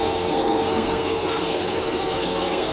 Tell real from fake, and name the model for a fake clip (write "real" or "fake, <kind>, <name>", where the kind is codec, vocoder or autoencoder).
fake, codec, SNAC